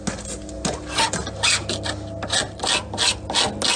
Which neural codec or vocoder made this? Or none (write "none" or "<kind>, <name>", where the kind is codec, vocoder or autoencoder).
none